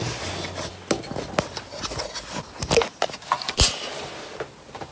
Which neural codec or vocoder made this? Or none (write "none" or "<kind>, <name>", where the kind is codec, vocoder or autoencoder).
none